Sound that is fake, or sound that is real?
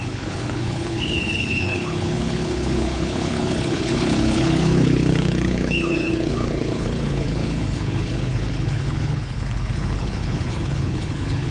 fake